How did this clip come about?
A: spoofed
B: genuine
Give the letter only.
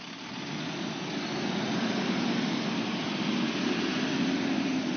B